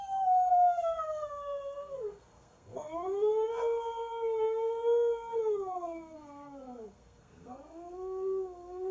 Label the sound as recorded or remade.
remade